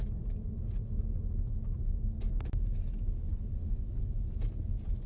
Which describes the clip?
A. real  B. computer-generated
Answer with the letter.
A